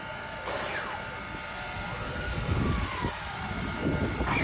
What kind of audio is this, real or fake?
real